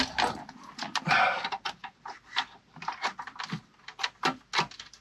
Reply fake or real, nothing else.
real